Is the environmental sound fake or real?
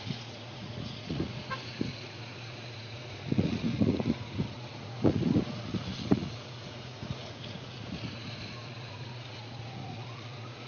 fake